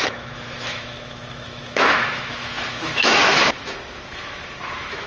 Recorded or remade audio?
remade